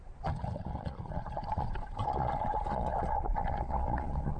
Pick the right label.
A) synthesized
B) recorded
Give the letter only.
A